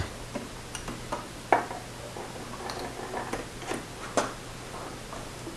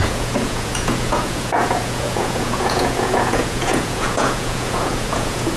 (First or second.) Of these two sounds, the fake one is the second